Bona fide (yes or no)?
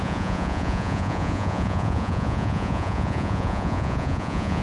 no